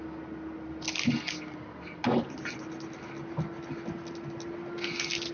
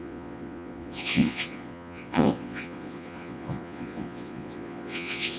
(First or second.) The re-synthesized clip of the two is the second